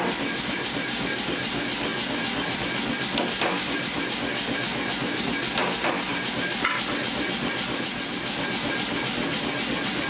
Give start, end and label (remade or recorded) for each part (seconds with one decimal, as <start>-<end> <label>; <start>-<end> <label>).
0.0-10.1 recorded